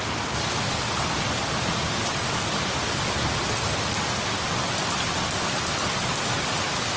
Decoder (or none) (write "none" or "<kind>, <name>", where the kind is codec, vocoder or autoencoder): none